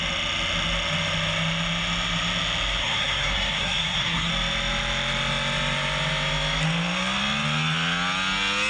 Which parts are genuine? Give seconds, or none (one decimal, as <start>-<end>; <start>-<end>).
0.0-2.8; 4.3-8.7